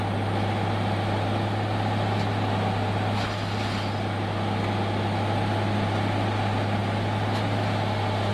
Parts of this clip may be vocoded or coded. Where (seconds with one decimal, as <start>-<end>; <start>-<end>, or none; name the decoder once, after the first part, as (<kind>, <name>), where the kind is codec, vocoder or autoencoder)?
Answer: none